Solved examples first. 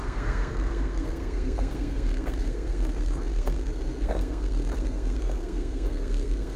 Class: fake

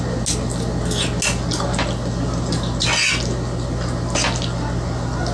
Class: real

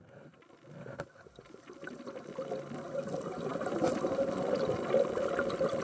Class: real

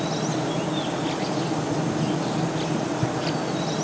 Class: real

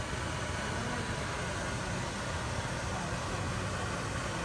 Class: real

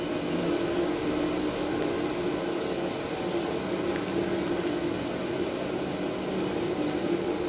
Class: real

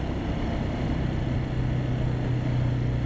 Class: real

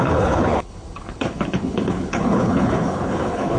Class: fake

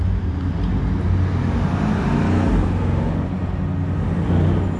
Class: real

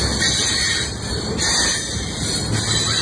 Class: real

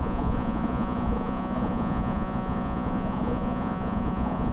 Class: fake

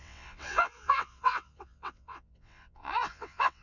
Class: fake